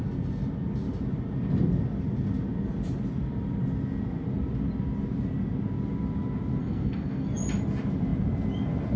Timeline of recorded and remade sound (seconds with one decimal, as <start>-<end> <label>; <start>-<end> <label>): 0.0-6.6 recorded; 6.6-7.4 remade; 7.4-9.0 recorded